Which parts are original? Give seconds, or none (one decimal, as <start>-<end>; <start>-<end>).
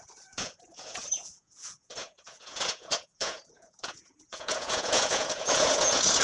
none